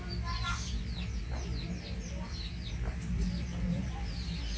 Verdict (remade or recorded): recorded